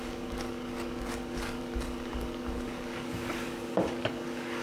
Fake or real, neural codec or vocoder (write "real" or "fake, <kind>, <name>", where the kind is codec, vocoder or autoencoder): fake, codec, DAC